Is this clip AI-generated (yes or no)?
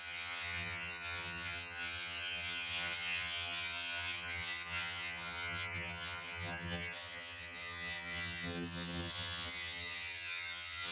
yes